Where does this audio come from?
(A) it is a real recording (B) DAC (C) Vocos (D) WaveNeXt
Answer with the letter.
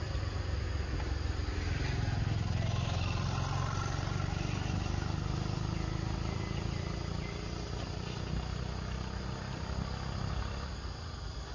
A